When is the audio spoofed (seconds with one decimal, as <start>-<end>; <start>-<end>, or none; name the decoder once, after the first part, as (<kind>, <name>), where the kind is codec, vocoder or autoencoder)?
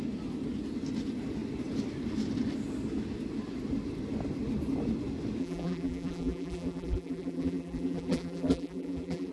5.4-9.3 (vocoder, BigVGAN v2)